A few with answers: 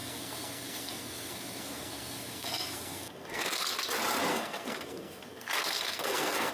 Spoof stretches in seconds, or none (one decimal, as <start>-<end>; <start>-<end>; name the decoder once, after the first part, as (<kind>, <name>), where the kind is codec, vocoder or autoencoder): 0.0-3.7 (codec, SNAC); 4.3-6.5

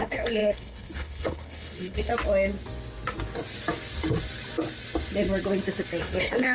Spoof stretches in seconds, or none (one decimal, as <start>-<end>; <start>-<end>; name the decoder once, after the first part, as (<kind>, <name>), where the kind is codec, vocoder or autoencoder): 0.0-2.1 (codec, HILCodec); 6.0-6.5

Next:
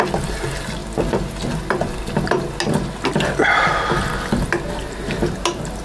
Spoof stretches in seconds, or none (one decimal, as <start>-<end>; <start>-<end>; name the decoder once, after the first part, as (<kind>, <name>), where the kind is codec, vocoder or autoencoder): none

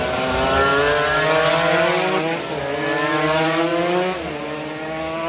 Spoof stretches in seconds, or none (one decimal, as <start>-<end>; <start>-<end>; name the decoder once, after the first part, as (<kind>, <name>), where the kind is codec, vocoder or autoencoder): none